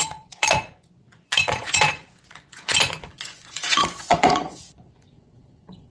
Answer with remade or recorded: remade